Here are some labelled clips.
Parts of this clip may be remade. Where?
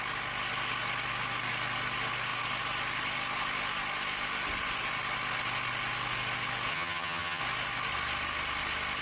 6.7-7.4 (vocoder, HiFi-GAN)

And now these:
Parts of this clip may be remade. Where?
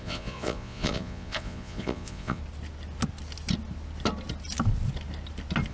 0.0-2.4 (vocoder, Vocos)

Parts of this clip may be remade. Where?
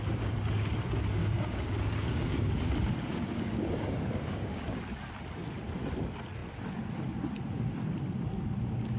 1.2-2.7 (codec, DAC); 3.1-4.8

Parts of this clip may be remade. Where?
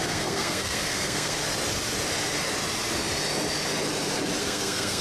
0.0-1.4 (codec, SNAC); 4.4-5.0